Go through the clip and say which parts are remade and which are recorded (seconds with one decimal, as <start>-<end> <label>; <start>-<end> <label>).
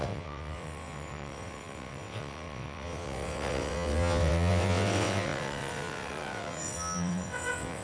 0.0-7.8 remade